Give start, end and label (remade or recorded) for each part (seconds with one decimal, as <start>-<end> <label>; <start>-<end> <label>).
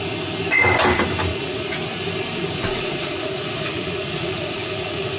0.0-1.3 recorded; 1.3-2.0 remade; 2.0-2.7 recorded; 2.7-5.2 remade